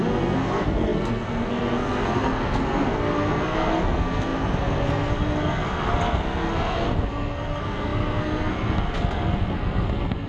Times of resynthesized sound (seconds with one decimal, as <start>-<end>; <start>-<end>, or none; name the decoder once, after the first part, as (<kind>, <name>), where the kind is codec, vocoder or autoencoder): 0.0-10.3 (codec, SNAC)